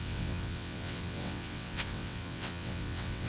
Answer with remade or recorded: remade